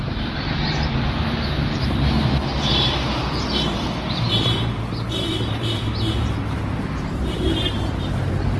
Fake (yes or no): yes